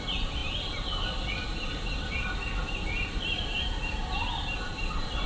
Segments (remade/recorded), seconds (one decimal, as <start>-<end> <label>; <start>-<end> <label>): 0.0-5.3 recorded